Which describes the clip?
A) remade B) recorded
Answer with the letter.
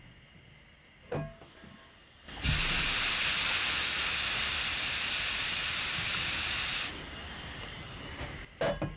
B